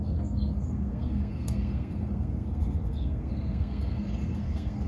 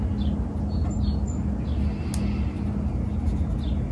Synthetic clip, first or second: first